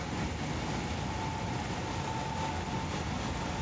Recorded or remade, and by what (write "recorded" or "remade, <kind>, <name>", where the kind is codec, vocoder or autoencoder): recorded